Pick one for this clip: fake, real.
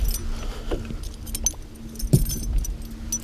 real